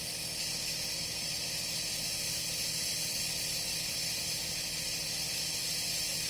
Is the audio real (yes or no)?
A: yes